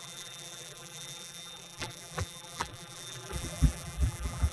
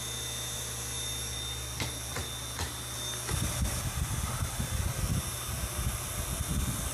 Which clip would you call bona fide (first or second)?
second